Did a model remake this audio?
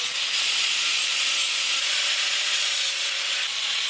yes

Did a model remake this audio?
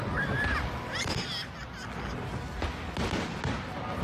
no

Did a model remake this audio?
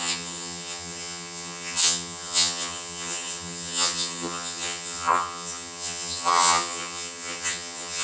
yes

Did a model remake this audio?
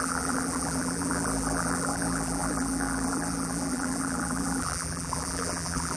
yes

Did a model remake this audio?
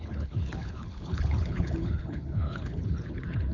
yes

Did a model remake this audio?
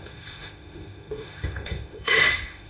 yes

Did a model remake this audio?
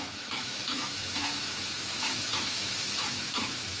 yes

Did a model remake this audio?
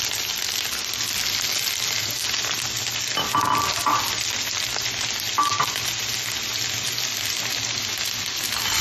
no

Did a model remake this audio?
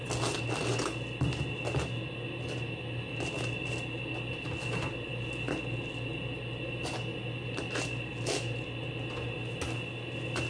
no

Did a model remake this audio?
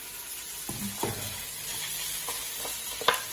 no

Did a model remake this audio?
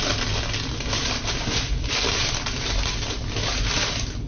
no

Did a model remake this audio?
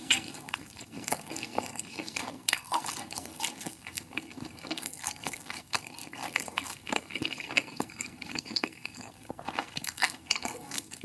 yes